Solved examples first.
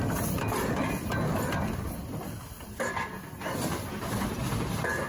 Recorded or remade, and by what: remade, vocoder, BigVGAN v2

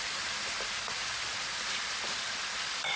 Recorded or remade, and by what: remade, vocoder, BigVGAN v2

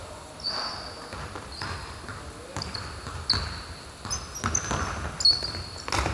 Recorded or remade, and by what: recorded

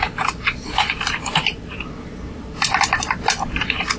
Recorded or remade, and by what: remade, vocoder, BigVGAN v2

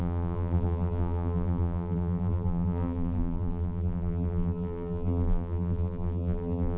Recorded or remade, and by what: remade, vocoder, BigVGAN v2